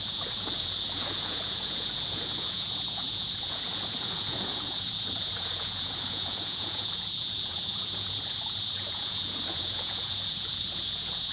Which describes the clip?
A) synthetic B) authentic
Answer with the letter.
A